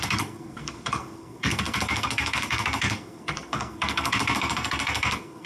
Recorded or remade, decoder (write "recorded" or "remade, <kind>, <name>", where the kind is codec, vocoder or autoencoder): remade, codec, SNAC